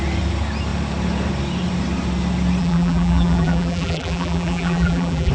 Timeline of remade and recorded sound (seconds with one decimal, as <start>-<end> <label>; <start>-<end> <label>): 0.0-2.6 recorded; 2.6-5.3 remade

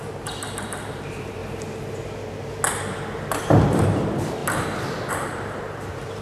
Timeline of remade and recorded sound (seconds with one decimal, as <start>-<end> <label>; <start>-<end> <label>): 0.0-1.4 remade; 1.4-3.5 recorded; 3.5-4.4 remade; 4.4-5.1 recorded; 5.1-6.2 remade